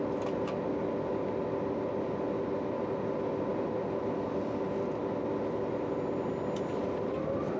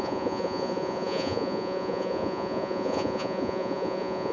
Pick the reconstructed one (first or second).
second